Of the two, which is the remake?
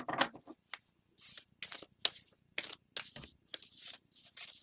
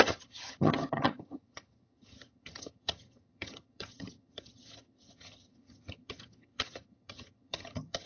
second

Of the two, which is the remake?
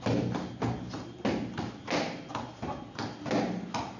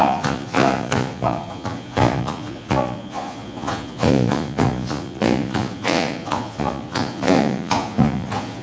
second